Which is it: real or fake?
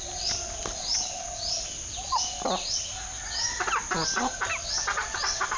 real